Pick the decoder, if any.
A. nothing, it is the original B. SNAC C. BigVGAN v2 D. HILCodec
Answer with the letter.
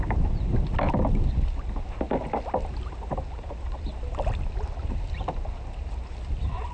A